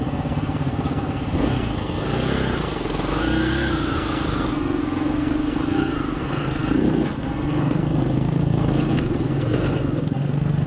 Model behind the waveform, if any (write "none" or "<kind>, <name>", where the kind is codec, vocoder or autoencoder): codec, SNAC